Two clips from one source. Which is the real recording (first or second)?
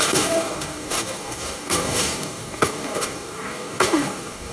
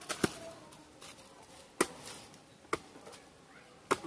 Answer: second